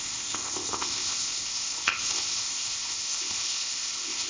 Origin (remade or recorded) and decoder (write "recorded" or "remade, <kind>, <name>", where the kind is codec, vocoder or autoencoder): remade, codec, ZipCodec